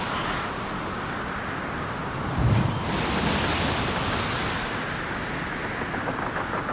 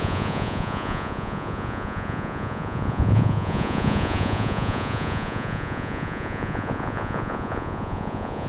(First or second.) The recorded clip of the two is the first